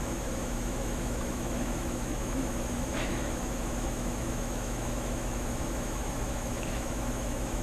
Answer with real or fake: fake